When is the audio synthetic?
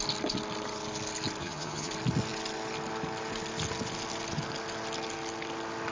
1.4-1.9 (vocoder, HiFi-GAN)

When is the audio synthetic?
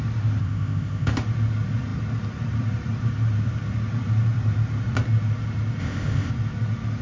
0.4-1.1 (codec, ZipCodec); 5.8-6.3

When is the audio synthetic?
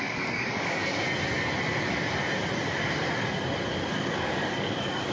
0.0-0.8 (codec, DAC); 3.9-5.1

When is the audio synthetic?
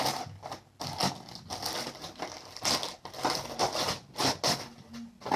none